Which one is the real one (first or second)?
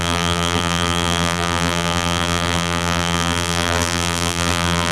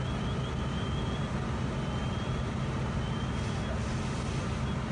second